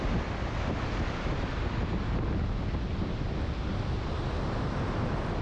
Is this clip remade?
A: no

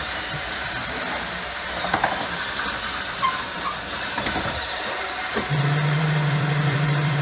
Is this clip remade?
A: yes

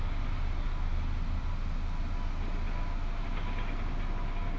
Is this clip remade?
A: no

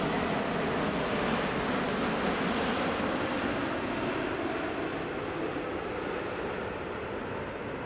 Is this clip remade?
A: no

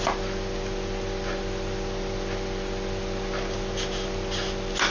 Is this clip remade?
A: no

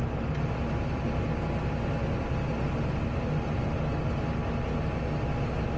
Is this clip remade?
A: no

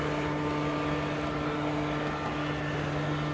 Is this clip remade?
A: no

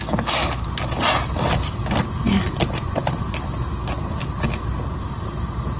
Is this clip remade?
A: no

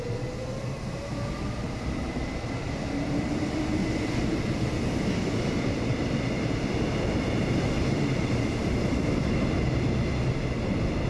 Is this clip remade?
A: no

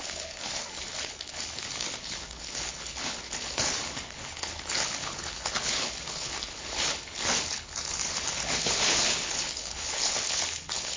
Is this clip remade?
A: yes